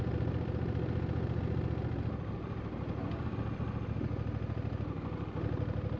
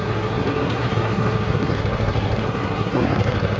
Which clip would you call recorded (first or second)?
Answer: first